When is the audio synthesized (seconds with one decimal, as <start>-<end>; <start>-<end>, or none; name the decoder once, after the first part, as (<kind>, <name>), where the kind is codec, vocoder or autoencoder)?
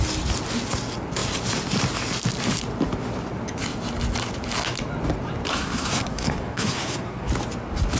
5.5-7.3 (codec, SNAC)